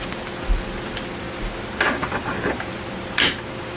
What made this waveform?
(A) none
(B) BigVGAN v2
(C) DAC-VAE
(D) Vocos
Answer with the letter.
A